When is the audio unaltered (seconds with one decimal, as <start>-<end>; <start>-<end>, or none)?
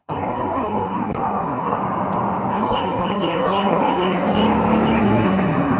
1.8-2.5; 4.4-5.0